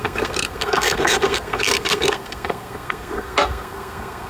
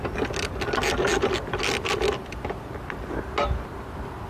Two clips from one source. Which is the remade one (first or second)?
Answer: first